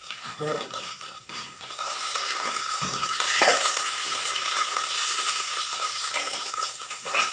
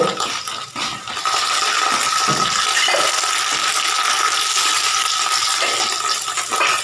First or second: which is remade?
first